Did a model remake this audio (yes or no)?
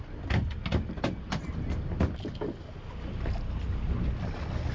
no